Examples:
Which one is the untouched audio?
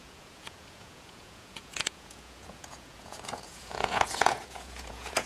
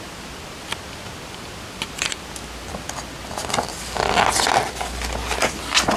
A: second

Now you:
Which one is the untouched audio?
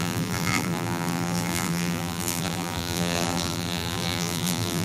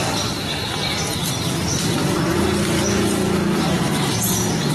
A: second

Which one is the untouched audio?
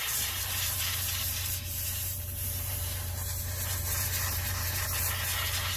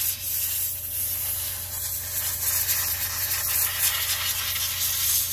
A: second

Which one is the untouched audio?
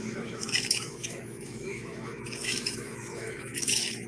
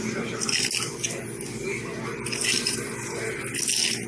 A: second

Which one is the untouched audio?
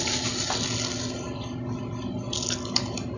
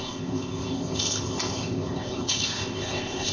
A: first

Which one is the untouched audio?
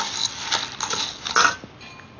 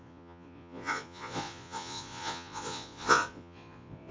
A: first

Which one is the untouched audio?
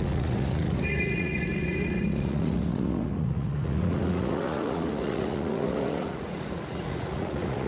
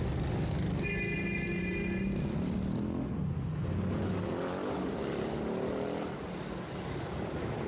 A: second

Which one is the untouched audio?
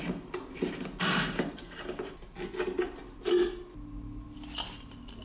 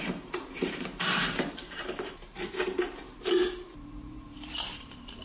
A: first